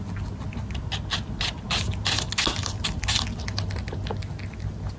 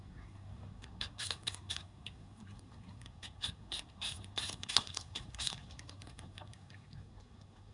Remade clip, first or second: second